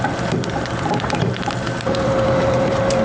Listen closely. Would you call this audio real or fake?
fake